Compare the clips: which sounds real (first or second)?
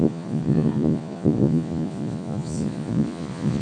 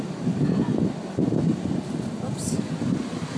second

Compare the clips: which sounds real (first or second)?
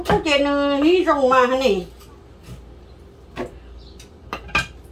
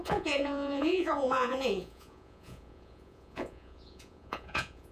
first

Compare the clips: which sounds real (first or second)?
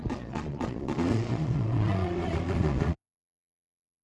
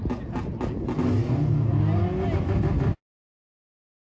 second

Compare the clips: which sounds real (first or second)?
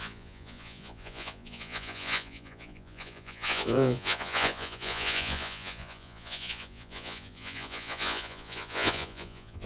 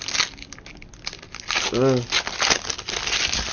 second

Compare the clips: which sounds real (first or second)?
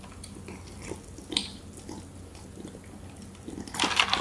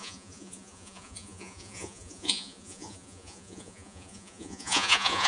first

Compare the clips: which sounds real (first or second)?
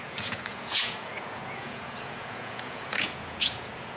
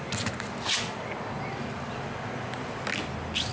second